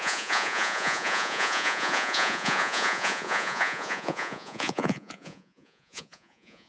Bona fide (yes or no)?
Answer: no